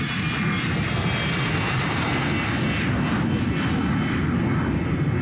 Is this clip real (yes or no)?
yes